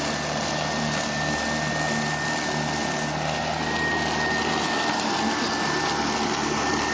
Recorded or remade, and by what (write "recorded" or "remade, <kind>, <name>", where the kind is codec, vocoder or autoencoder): recorded